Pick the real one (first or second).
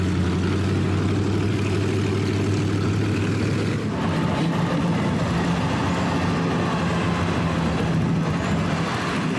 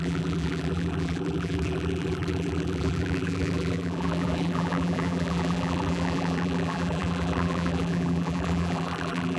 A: first